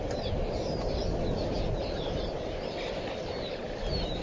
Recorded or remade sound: remade